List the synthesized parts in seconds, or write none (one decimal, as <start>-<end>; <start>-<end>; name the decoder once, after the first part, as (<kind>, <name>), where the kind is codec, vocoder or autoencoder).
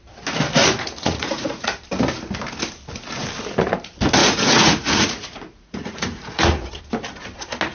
0.6-1.8 (vocoder, Vocos); 4.2-6.8